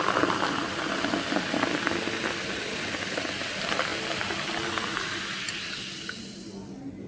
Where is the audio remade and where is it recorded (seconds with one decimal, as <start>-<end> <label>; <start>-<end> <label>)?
0.0-7.1 recorded